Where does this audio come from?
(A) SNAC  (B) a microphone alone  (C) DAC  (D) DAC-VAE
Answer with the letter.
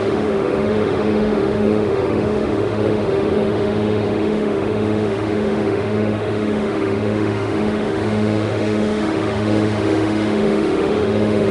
D